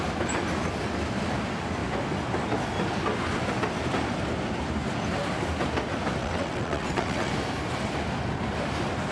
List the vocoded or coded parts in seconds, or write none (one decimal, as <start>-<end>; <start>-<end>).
6.2-7.3